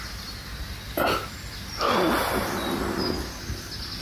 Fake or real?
real